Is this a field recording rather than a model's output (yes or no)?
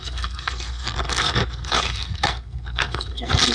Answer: no